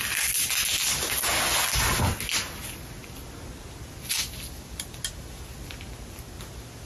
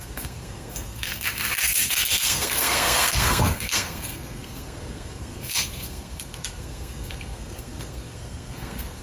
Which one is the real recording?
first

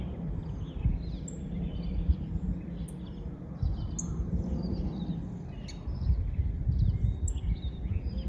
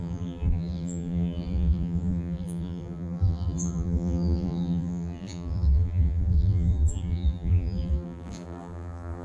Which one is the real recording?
first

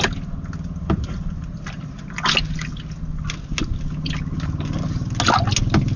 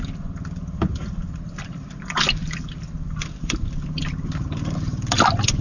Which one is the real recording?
first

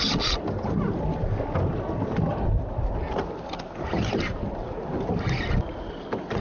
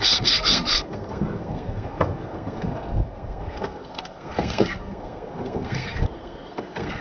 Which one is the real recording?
first